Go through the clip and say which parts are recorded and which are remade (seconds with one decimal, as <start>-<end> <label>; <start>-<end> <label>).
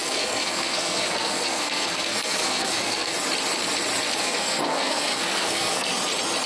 0.0-3.1 remade; 3.1-4.2 recorded; 4.2-5.9 remade; 5.9-6.5 recorded